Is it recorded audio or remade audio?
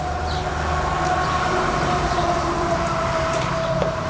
remade